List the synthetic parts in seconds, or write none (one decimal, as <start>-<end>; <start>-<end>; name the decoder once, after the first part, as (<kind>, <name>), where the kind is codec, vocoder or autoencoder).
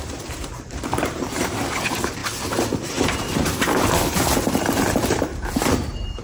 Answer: 0.0-2.2 (vocoder, BigVGAN v2); 3.1-6.2